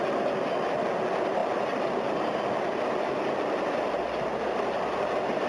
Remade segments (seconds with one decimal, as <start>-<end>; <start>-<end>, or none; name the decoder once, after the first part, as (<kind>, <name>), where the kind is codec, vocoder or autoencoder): none

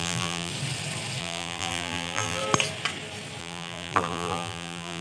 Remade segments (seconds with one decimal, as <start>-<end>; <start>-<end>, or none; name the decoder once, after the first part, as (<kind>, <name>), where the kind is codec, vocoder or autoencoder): 0.0-0.5 (vocoder, BigVGAN v2); 1.2-2.4; 3.4-5.0

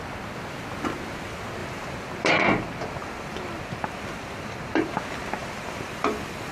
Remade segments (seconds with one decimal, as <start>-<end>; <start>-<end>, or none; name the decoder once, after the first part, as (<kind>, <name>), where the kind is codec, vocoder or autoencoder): 1.6-2.4 (vocoder, BigVGAN v2); 3.0-4.9; 5.4-6.5

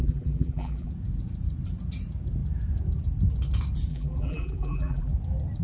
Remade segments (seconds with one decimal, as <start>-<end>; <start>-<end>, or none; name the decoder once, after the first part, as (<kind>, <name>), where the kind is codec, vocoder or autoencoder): 0.0-0.9 (vocoder, BigVGAN v2); 3.9-5.1

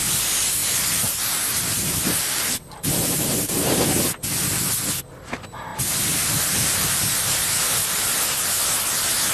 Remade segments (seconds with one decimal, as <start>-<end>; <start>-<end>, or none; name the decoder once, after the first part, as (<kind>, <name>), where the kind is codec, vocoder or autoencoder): 0.6-4.0 (vocoder, BigVGAN v2); 5.7-7.0

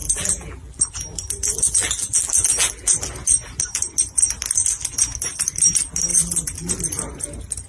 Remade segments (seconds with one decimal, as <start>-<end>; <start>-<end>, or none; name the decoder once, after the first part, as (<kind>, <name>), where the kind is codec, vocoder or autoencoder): 0.0-0.8 (vocoder, BigVGAN v2); 1.4-3.1; 6.1-6.7

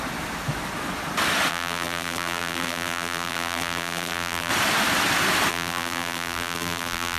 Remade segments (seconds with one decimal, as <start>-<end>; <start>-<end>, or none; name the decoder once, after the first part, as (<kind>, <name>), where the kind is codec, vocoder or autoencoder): 1.5-4.5 (vocoder, BigVGAN v2); 5.5-7.2

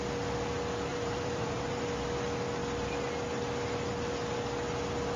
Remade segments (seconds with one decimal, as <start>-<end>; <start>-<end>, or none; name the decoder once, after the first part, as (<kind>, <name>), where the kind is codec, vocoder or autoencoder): 0.9-1.8 (vocoder, BigVGAN v2)